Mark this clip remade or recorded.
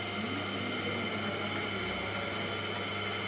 recorded